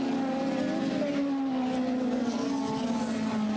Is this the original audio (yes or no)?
yes